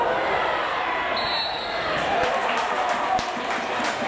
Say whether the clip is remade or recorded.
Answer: recorded